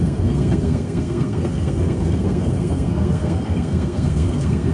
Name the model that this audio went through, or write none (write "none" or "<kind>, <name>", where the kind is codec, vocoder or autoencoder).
codec, SNAC